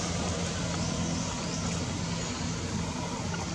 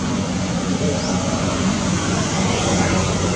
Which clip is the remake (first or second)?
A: second